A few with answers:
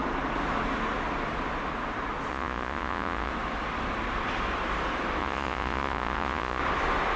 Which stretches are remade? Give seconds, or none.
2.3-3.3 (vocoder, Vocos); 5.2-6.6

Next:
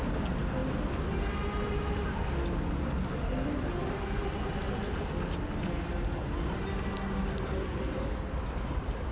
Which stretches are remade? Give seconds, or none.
none

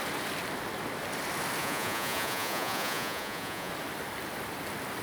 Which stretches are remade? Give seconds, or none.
1.6-3.7 (vocoder, Vocos)

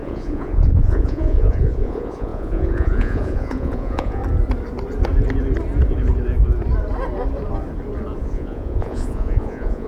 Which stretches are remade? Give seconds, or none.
0.0-4.2 (vocoder, Vocos); 8.2-9.9

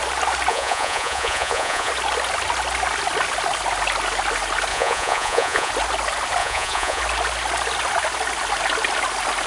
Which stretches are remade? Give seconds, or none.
0.5-1.9 (vocoder, Vocos); 4.7-5.7; 6.4-7.0

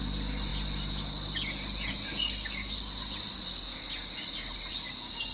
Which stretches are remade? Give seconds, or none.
none

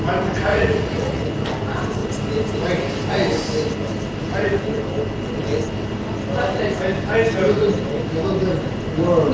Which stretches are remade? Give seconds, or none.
0.5-1.3 (vocoder, Vocos)

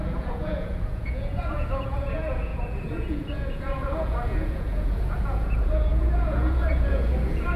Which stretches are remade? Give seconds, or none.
0.0-7.6 (vocoder, Vocos)